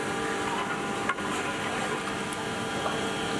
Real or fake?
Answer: real